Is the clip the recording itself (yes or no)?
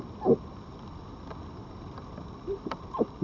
yes